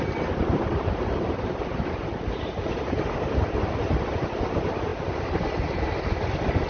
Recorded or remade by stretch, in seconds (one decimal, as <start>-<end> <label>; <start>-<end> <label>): 0.0-0.5 recorded; 0.5-4.3 remade; 4.3-6.7 recorded